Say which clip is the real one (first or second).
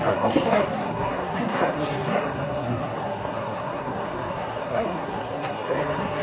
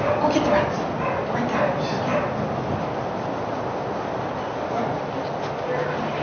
second